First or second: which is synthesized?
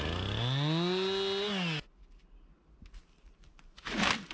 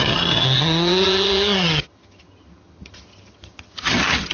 second